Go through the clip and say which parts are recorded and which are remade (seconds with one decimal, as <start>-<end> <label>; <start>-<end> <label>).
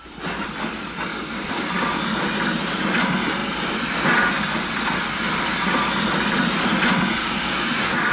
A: 0.0-1.1 recorded; 1.1-1.7 remade; 1.7-7.2 recorded; 7.2-8.1 remade